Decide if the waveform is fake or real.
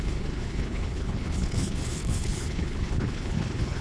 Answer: fake